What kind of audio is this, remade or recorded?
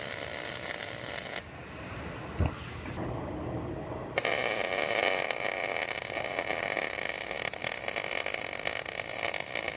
recorded